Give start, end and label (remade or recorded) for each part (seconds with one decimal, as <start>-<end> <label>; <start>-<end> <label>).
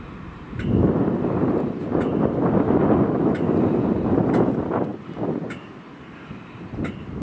0.0-7.2 recorded